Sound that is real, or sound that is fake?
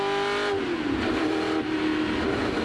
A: real